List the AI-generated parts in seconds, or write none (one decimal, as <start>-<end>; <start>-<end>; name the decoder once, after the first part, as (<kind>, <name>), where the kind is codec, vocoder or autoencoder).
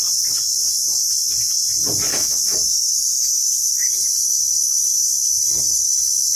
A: 2.1-3.9 (autoencoder, DAC-VAE)